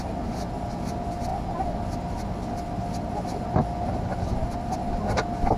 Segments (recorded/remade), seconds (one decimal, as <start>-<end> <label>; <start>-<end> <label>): 0.0-5.6 recorded